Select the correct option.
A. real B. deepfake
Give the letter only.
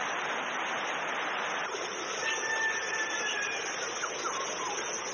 A